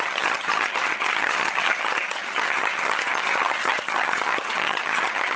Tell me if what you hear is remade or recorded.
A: remade